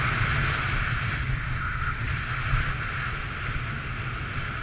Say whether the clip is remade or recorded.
recorded